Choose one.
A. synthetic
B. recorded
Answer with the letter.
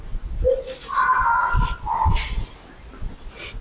B